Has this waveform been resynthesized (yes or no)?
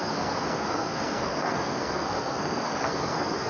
yes